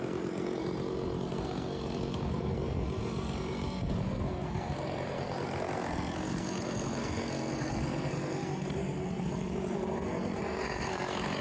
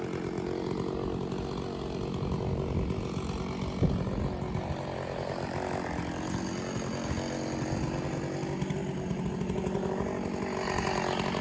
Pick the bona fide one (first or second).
second